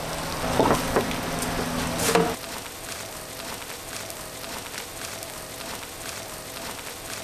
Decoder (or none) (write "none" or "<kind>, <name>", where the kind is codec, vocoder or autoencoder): none